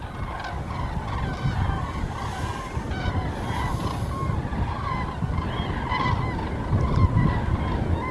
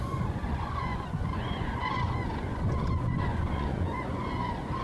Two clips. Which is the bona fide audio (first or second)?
first